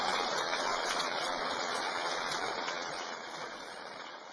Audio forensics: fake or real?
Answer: fake